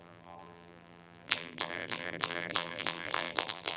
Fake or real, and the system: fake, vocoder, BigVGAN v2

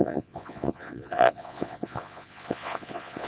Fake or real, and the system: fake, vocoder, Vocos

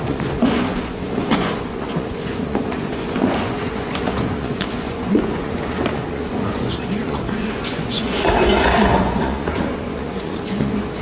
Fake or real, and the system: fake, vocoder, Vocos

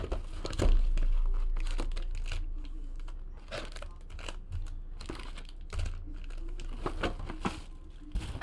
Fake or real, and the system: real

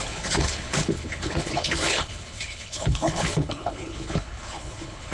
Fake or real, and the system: fake, codec, HILCodec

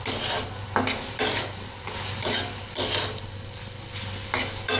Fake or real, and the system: real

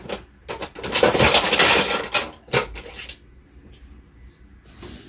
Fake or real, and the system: real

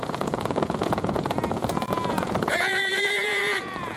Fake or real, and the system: fake, vocoder, Vocos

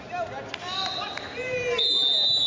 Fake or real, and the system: real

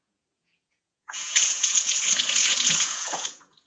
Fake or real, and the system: fake, vocoder, Vocos